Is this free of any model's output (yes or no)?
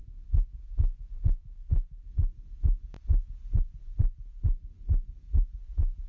yes